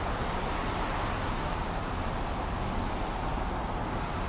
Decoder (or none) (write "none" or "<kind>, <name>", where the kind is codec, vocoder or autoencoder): none